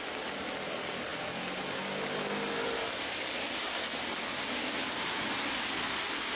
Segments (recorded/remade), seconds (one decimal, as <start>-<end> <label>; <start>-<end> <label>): 0.0-6.4 recorded